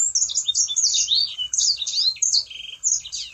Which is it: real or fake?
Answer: real